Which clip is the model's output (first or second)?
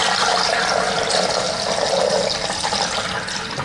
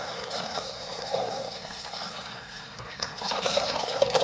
second